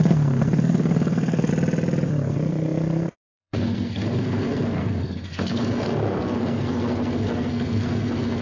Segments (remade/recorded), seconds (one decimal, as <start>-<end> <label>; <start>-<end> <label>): 0.0-1.5 remade; 1.5-2.1 recorded; 2.1-8.4 remade